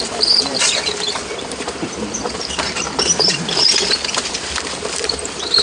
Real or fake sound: fake